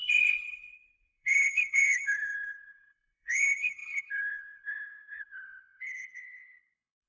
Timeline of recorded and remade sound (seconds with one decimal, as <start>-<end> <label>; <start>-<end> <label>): 0.0-7.1 remade